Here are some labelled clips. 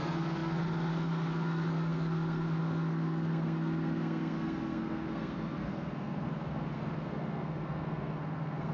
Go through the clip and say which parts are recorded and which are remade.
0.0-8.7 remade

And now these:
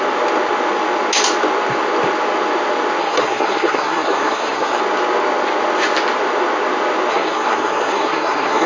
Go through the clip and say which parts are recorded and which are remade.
0.0-3.0 recorded; 3.0-4.8 remade; 4.8-7.1 recorded; 7.1-8.7 remade

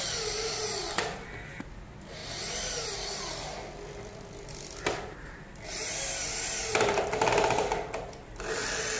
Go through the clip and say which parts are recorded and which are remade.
0.0-9.0 recorded

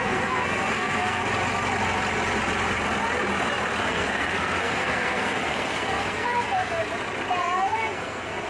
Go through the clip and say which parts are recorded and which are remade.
0.0-1.2 remade; 1.2-3.8 recorded; 3.8-6.8 remade; 6.8-7.4 recorded; 7.4-8.5 remade

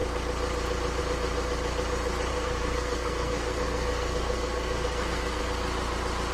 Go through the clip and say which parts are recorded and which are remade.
0.0-2.3 recorded; 2.3-5.4 remade; 5.4-6.3 recorded

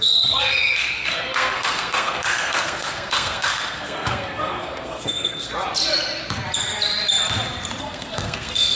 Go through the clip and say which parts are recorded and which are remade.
0.0-5.5 remade; 5.5-7.8 recorded; 7.8-8.7 remade

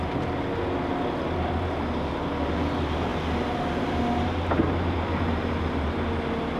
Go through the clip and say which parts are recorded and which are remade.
0.0-6.6 recorded

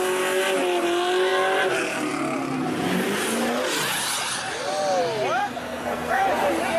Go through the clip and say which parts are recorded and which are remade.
0.0-5.4 recorded; 5.4-6.2 remade; 6.2-6.8 recorded